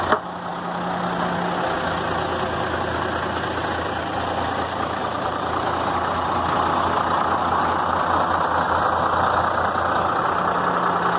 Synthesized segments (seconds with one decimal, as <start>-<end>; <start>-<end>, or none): 5.0-5.6